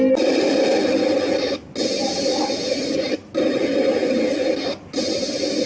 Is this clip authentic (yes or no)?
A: yes